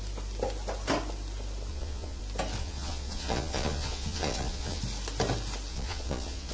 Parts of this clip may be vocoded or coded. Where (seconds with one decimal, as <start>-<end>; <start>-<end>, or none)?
1.7-2.2; 2.6-4.8; 5.7-6.5